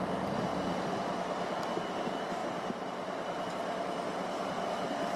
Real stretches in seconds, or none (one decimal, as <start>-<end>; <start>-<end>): 0.0-2.4; 3.5-5.2